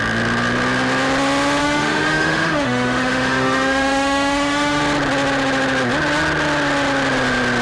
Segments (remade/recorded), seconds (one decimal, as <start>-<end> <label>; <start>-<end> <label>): 0.0-1.6 recorded; 1.6-4.8 remade; 4.8-7.6 recorded